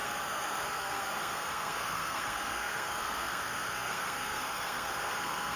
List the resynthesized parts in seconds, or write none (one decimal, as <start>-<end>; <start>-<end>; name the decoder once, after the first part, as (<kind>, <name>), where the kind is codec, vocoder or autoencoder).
0.0-5.6 (codec, SNAC)